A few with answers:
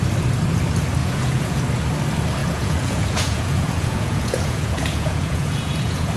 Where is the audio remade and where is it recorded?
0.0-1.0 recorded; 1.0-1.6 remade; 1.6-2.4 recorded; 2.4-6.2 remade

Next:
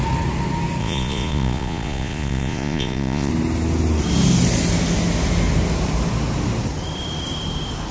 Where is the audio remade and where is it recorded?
0.0-0.8 recorded; 0.8-3.3 remade; 3.3-7.9 recorded

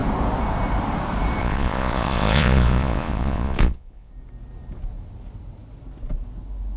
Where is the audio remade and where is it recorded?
0.0-1.4 recorded; 1.4-4.1 remade; 4.1-6.8 recorded